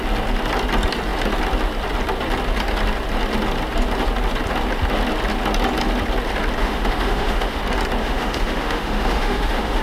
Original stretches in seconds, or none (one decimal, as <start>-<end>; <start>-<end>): 0.0-6.6; 7.6-8.0